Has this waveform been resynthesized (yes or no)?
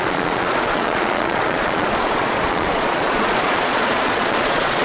yes